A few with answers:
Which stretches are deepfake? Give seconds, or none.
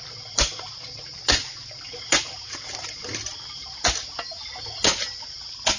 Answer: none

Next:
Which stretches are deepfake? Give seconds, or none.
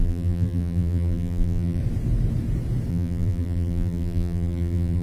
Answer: 0.0-1.8 (vocoder, BigVGAN v2); 2.9-5.0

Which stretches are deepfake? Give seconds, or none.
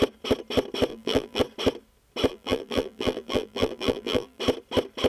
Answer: 0.9-1.4 (vocoder, BigVGAN v2); 2.3-4.4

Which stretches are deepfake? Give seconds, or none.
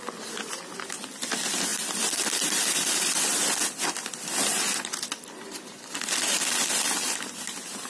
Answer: 1.7-2.5 (vocoder, BigVGAN v2)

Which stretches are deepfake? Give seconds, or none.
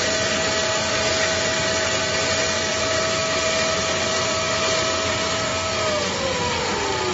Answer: none